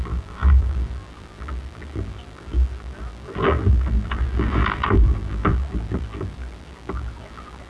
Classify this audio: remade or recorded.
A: remade